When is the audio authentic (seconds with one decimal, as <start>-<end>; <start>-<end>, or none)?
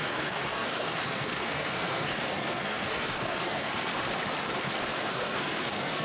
3.9-4.9